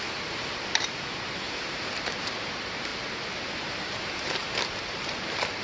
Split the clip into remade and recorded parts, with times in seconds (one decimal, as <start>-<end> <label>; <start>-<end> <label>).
0.0-2.9 remade; 2.9-3.5 recorded; 3.5-5.6 remade